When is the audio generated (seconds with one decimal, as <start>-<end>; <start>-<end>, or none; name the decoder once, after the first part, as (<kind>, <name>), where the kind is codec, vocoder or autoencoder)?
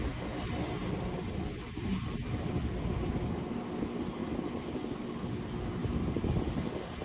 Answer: 4.2-4.9 (vocoder, BigVGAN v2); 5.8-6.6